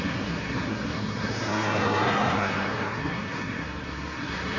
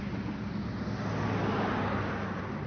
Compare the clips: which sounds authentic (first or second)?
second